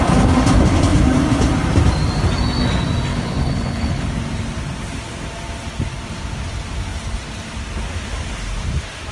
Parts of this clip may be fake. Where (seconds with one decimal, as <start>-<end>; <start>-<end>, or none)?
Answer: 3.1-4.1